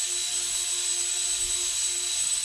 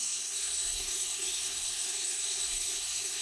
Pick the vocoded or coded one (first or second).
second